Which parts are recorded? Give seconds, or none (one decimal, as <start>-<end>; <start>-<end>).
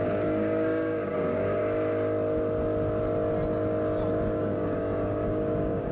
1.6-4.1